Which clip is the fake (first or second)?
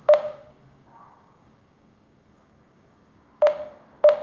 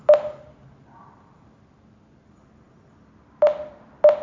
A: first